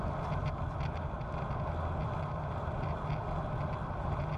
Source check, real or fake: real